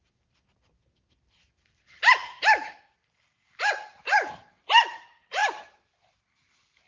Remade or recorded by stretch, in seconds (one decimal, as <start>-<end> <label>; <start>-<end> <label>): 0.0-5.4 remade; 5.4-6.2 recorded; 6.2-6.9 remade